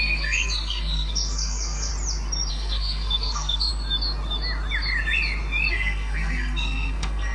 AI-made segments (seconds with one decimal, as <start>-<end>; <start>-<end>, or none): 0.0-1.9; 2.5-3.7; 5.7-7.3